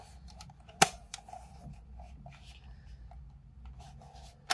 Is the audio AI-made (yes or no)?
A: no